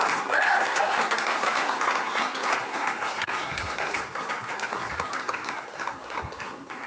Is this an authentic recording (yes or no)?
no